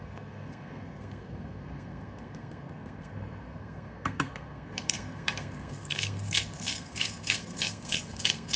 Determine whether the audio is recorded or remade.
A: remade